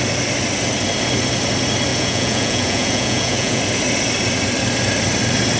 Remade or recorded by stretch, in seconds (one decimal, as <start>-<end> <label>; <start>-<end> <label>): 0.0-1.9 recorded; 1.9-3.6 remade; 3.6-5.6 recorded